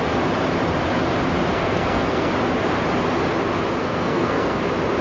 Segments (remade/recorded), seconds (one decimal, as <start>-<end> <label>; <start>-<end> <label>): 0.0-1.5 recorded; 1.5-2.3 remade; 2.3-3.8 recorded; 3.8-4.6 remade; 4.6-5.0 recorded